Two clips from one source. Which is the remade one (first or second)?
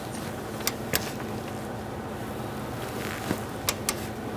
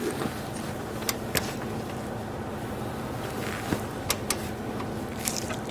second